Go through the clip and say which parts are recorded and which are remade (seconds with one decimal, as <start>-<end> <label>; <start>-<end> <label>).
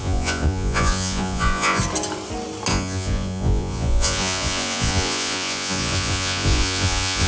0.0-1.8 remade; 1.8-2.7 recorded; 2.7-7.3 remade